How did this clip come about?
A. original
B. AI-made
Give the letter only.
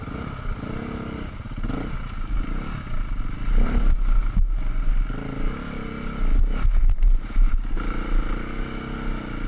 A